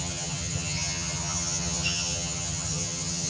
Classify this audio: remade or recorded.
remade